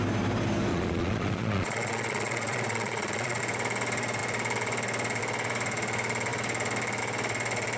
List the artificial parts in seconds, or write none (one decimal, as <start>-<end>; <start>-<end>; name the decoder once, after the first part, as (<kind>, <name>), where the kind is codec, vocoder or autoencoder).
0.7-3.4 (vocoder, Vocos)